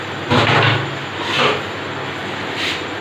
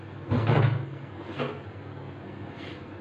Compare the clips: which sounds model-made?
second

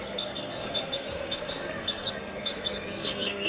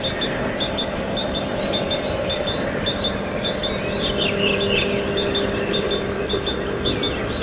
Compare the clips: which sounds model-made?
first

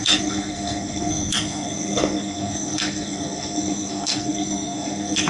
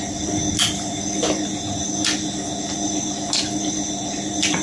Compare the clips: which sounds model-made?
first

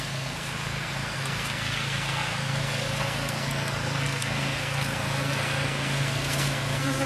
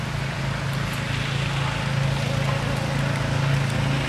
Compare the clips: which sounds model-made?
first